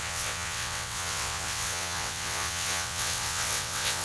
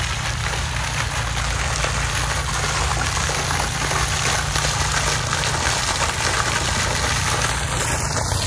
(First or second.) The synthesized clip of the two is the first